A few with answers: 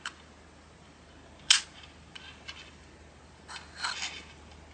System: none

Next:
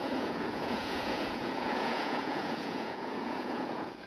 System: vocoder, Vocos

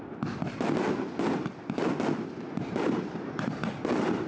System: none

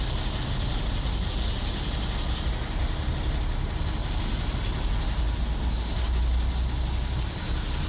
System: none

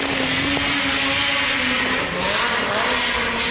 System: none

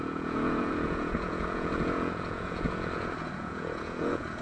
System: vocoder, Vocos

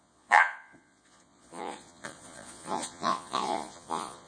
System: vocoder, Vocos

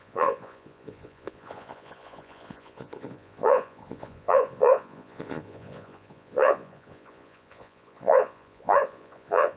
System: vocoder, Vocos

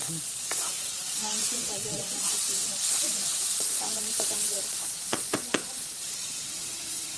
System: vocoder, Vocos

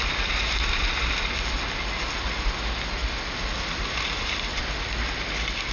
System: none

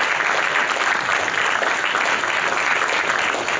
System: none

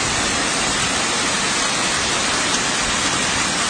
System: none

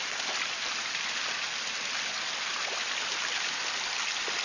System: none